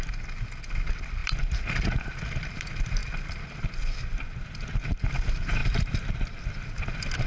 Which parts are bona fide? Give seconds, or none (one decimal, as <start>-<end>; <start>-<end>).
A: 0.0-5.6; 6.4-7.3